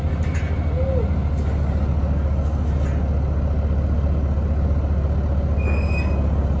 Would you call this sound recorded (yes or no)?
yes